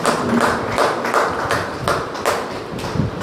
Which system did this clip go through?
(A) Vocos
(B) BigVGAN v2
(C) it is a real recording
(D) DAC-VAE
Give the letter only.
C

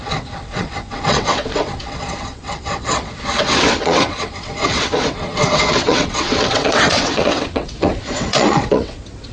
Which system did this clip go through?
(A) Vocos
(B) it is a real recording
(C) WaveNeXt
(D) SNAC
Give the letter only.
C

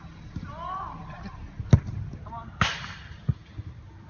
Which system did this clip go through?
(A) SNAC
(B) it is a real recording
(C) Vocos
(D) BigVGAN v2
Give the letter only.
B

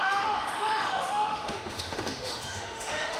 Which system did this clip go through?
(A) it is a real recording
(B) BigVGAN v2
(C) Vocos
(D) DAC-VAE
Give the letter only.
D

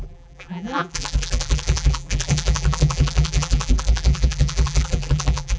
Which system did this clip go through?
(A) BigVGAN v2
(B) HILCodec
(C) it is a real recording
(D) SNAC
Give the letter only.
A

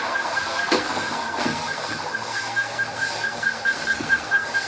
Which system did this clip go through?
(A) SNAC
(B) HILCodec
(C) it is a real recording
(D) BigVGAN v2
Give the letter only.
A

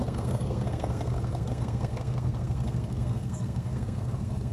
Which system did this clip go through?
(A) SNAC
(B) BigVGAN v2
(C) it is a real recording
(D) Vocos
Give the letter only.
A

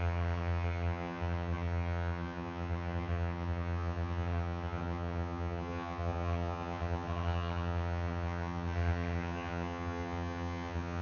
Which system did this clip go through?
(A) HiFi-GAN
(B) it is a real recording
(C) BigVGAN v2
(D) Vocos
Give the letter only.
A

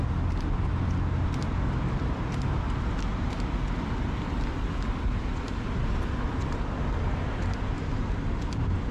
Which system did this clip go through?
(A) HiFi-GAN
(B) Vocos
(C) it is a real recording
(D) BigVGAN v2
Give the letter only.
C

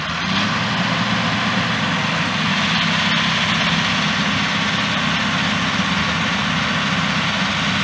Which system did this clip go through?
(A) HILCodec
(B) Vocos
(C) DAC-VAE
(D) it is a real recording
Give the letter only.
D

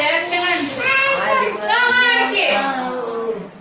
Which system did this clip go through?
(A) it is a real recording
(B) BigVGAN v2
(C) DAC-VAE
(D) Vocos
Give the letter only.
A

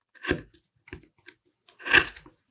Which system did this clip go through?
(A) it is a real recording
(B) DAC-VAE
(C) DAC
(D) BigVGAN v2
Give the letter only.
A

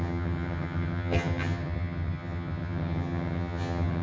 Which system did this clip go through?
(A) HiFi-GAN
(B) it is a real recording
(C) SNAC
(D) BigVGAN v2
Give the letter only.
A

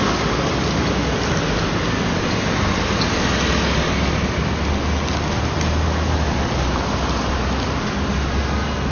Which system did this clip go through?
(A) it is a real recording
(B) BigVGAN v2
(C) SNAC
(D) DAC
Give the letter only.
A